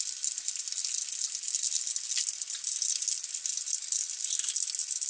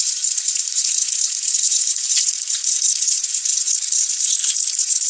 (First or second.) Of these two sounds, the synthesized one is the second